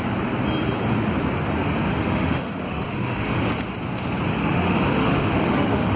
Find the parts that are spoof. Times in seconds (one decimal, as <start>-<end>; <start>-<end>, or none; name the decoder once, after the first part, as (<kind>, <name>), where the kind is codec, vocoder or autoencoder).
1.9-3.4 (autoencoder, DAC-VAE); 4.4-6.0